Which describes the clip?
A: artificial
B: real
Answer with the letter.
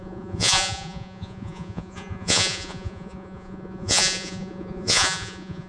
A